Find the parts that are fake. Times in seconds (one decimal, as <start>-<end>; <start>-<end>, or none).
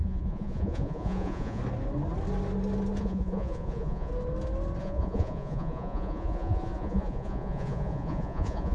0.0-1.6; 3.0-4.1; 4.8-8.7